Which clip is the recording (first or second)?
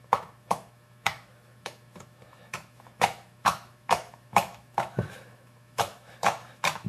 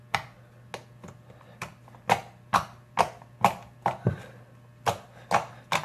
second